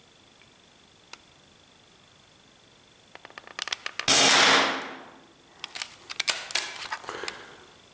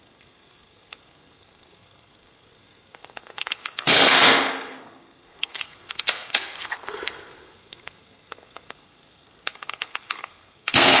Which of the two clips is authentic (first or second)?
first